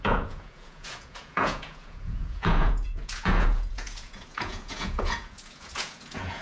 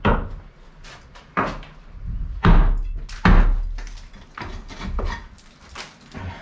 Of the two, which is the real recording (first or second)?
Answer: second